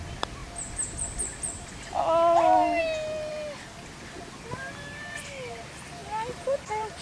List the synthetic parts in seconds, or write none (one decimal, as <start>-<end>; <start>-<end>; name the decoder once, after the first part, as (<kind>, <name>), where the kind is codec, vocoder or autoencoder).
6.0-7.0 (vocoder, BigVGAN v2)